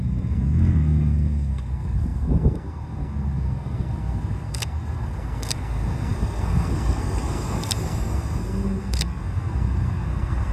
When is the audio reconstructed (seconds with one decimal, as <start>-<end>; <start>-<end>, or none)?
0.0-10.5